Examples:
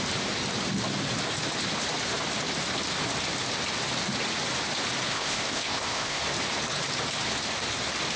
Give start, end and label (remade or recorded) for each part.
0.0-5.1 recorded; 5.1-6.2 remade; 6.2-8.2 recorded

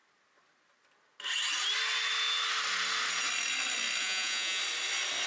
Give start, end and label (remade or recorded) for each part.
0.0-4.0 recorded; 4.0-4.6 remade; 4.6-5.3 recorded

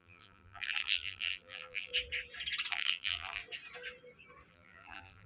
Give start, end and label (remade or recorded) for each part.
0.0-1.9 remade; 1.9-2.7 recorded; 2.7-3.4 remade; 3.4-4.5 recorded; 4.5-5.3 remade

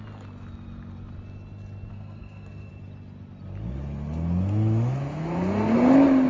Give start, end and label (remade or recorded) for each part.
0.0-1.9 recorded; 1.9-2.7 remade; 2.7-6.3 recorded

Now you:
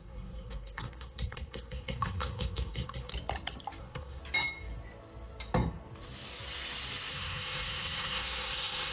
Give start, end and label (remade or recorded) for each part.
0.0-3.1 remade; 3.1-3.8 recorded; 3.8-4.2 remade; 4.2-7.1 recorded; 7.1-8.9 remade